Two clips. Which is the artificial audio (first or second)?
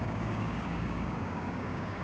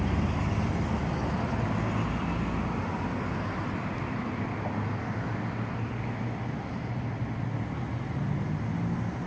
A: first